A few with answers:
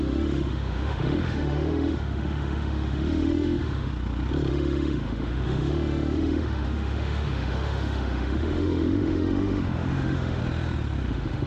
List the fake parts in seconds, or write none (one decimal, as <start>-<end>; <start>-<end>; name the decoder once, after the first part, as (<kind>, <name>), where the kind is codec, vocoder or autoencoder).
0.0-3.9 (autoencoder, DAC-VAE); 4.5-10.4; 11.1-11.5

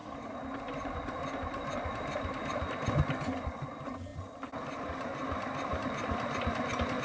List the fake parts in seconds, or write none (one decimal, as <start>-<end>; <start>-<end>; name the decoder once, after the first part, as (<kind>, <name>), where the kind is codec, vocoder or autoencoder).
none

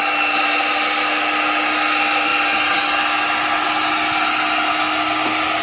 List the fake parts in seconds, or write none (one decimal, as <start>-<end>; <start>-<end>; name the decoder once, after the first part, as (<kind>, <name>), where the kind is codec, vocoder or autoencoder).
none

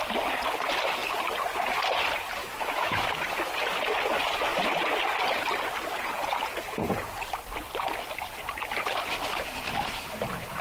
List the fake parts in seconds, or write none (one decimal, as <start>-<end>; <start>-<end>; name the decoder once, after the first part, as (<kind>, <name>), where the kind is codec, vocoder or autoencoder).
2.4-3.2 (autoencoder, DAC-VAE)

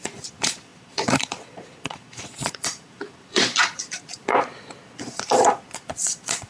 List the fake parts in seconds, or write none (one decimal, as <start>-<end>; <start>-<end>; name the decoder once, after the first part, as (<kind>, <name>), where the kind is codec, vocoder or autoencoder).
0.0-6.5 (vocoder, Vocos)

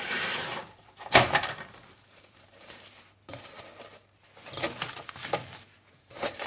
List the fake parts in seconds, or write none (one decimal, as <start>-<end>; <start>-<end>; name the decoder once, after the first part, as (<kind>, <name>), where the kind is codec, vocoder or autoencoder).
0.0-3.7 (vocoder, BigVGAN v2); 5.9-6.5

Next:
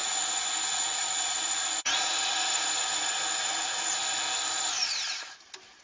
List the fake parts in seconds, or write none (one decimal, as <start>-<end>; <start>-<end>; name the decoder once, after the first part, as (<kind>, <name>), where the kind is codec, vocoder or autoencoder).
0.0-4.0 (vocoder, Vocos)

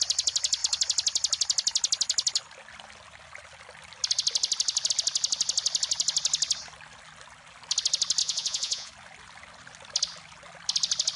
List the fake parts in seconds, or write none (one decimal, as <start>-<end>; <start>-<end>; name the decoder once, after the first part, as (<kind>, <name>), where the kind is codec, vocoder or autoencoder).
8.2-8.9 (vocoder, Vocos)